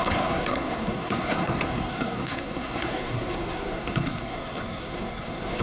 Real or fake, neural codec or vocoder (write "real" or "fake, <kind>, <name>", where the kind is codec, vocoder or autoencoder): fake, codec, SNAC